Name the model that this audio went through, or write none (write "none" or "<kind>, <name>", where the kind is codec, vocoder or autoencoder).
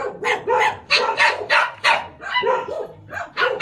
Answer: vocoder, BigVGAN v2